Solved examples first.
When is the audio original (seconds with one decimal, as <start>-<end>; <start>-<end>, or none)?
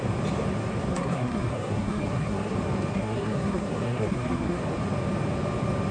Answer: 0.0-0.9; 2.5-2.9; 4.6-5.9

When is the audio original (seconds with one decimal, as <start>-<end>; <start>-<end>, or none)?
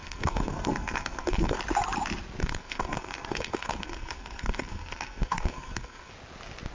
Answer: 1.6-2.4; 6.1-6.7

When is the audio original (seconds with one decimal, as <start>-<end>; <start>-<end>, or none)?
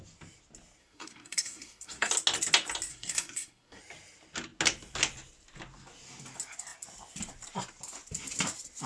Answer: 0.0-0.8; 2.1-2.9; 3.8-8.9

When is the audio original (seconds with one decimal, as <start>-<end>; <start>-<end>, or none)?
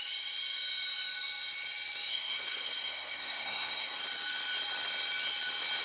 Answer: 0.0-2.1; 4.0-5.8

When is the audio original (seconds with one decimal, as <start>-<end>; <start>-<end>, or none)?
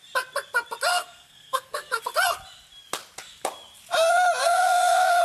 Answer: 0.0-0.9; 2.0-4.4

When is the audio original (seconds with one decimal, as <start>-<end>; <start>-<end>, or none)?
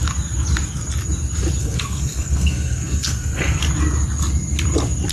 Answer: 0.0-1.6; 3.6-5.1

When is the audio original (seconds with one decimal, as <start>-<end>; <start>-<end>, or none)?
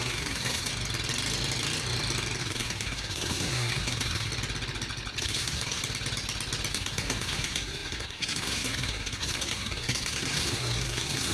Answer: 0.7-2.4; 4.3-5.2; 5.8-6.7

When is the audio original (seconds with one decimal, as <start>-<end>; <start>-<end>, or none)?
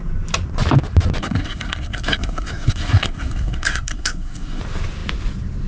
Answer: 0.0-1.2; 4.6-5.7